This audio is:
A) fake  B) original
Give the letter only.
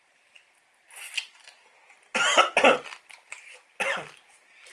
B